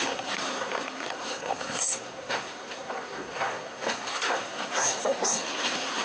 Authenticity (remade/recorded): remade